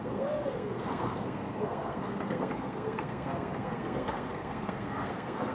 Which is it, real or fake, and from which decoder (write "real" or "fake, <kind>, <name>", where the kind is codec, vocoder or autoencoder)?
fake, codec, SNAC